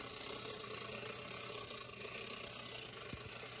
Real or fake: real